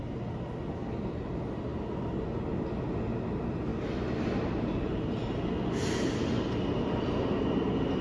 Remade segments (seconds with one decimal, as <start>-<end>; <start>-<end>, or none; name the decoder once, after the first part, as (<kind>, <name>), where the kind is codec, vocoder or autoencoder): none